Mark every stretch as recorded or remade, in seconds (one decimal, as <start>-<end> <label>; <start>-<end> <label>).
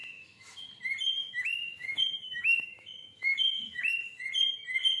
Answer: 0.0-0.6 remade; 0.6-1.2 recorded; 1.2-4.2 remade; 4.2-5.0 recorded